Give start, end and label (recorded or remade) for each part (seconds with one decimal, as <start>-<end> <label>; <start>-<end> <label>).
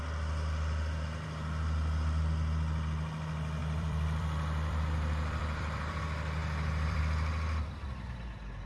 0.0-3.6 recorded; 3.6-6.0 remade; 6.0-6.4 recorded; 6.4-7.0 remade; 7.0-8.7 recorded